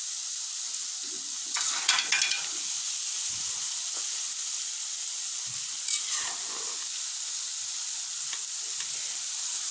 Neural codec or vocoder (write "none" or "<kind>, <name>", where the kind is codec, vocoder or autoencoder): none